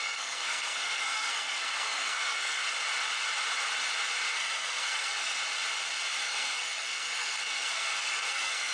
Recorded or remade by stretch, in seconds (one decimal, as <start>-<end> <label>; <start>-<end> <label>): 0.0-2.6 remade; 2.6-4.3 recorded; 4.3-5.4 remade; 5.4-6.2 recorded; 6.2-8.7 remade